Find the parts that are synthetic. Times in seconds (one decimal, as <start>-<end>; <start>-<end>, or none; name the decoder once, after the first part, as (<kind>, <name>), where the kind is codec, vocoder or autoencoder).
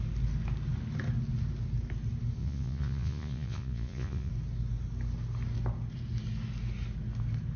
2.4-4.3 (vocoder, Vocos)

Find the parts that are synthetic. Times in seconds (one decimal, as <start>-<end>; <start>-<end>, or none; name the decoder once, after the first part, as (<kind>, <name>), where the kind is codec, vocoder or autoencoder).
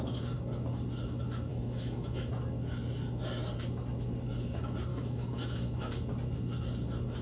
1.5-2.3 (autoencoder, DAC-VAE); 4.9-5.9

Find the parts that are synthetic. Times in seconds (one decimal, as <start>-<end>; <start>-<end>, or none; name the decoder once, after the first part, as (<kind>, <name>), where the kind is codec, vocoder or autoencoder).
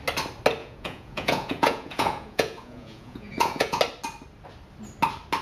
0.6-3.8 (vocoder, Vocos)